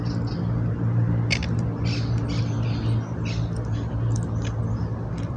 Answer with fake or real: real